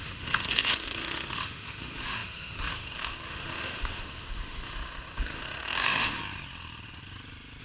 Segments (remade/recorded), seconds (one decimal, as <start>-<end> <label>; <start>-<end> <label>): 0.0-6.2 remade; 6.2-7.6 recorded